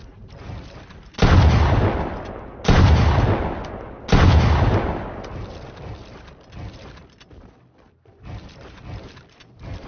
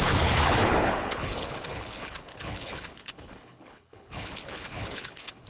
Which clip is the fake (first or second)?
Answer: second